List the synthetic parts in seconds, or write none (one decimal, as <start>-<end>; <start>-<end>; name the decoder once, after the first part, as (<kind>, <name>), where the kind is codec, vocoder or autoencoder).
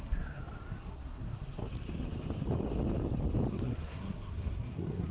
0.0-0.4 (codec, SNAC); 0.9-1.6; 3.5-5.1